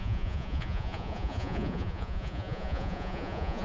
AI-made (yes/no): yes